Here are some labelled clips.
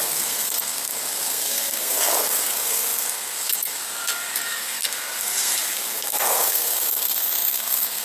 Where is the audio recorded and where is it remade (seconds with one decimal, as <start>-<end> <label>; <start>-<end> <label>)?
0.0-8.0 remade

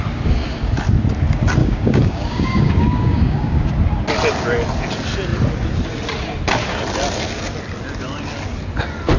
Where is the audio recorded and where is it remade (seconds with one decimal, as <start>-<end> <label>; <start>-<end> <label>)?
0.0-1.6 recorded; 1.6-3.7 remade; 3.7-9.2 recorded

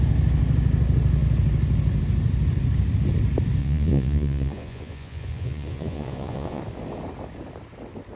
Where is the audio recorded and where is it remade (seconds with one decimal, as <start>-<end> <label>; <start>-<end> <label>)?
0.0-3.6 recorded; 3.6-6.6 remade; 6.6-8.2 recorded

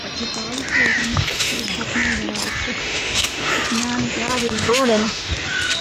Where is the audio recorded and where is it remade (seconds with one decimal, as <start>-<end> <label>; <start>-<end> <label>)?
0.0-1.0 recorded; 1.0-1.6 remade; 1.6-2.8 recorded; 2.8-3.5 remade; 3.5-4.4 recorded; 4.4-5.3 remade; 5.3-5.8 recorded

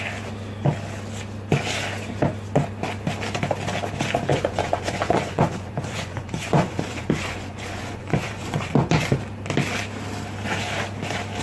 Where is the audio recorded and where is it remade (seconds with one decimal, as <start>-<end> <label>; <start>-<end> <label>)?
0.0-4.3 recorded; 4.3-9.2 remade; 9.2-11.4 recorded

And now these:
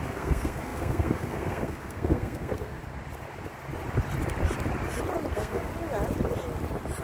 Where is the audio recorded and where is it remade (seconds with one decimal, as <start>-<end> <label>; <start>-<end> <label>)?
0.0-2.8 remade; 2.8-5.3 recorded; 5.3-5.7 remade; 5.7-7.0 recorded

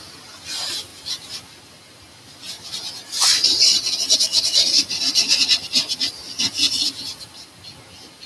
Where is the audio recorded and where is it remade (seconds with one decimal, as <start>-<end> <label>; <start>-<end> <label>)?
0.0-4.3 recorded; 4.3-7.2 remade; 7.2-8.3 recorded

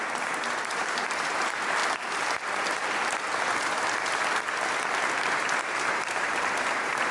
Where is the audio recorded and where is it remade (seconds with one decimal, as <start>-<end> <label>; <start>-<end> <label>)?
0.0-1.8 remade; 1.8-5.4 recorded; 5.4-7.1 remade